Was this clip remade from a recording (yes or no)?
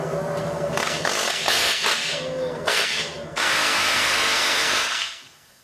yes